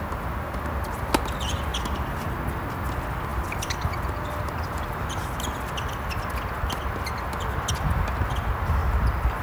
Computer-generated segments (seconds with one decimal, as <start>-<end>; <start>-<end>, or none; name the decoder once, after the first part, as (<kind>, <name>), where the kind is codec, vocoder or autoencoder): 3.3-5.3 (vocoder, BigVGAN v2); 8.8-9.4